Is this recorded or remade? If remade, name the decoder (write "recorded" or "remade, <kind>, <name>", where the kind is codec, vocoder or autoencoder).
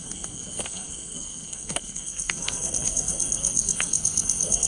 remade, codec, SNAC